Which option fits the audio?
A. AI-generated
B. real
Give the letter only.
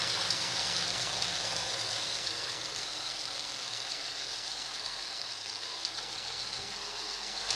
A